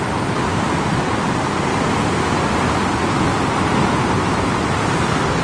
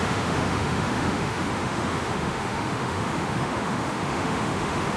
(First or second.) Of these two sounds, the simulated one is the second